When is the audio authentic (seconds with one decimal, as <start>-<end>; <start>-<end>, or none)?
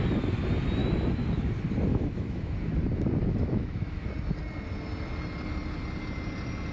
0.0-0.8; 1.5-1.9; 2.5-3.2; 4.1-6.7